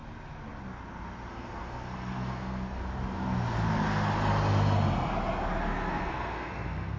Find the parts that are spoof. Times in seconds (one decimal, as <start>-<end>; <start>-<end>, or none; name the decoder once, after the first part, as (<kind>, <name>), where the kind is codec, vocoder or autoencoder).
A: 1.3-2.8 (codec, SNAC); 5.9-7.0